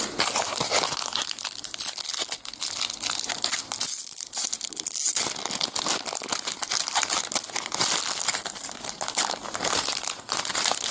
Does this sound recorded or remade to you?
recorded